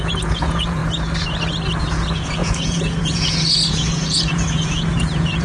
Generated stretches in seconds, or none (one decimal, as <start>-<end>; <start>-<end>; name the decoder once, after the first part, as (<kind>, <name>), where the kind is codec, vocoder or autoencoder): 0.0-0.8 (vocoder, Vocos); 1.8-5.4